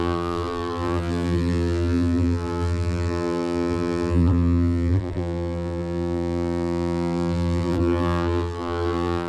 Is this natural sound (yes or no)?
no